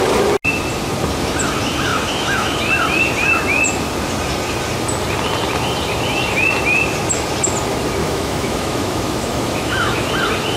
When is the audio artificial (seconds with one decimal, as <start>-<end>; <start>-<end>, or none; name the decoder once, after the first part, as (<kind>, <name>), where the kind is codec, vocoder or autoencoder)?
1.9-2.6 (autoencoder, DAC-VAE); 8.0-10.1